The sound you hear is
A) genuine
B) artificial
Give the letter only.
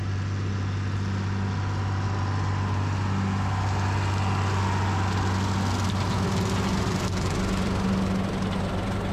A